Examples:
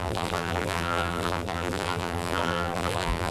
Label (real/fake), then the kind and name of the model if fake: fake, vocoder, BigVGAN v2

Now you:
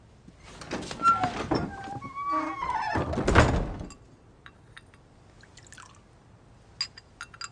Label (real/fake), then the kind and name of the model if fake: real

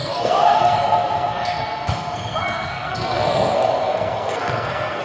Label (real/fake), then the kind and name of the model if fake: fake, codec, SNAC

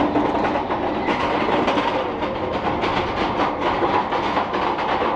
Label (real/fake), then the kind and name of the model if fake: real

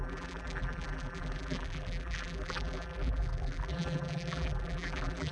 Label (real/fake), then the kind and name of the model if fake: fake, vocoder, BigVGAN v2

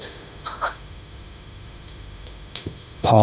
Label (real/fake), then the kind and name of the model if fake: fake, autoencoder, DAC-VAE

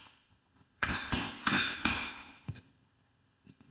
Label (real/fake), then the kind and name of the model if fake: fake, codec, ZipCodec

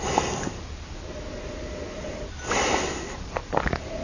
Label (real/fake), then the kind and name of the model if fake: real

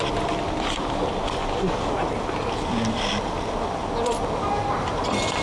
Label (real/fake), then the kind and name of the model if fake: real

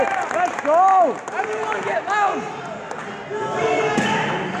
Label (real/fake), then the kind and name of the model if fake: real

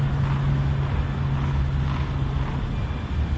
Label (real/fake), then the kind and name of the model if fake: real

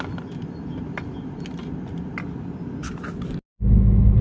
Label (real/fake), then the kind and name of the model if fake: real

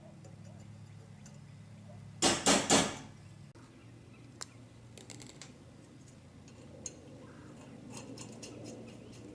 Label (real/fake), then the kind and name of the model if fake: real